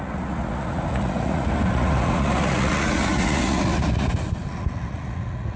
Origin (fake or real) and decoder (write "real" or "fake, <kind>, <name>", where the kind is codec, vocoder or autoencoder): fake, vocoder, Vocos